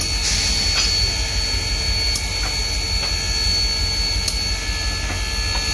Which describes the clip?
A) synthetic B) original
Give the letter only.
B